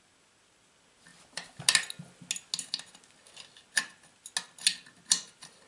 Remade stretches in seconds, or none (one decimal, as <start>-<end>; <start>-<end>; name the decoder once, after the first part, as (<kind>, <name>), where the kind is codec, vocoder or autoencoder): none